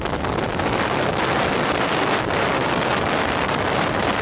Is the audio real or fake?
real